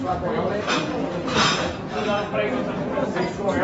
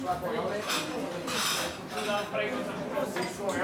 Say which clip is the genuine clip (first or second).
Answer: second